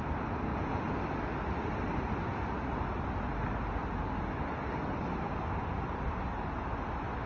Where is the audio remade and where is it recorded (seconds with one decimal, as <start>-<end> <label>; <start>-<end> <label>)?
0.0-0.5 recorded; 0.5-1.0 remade; 1.0-7.3 recorded